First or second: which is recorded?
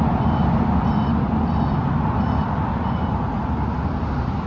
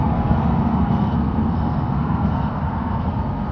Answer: first